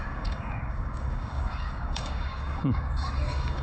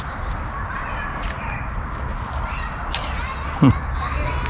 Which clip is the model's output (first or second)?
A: first